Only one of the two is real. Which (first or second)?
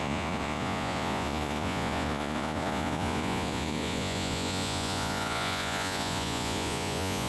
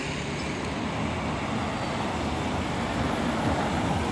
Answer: second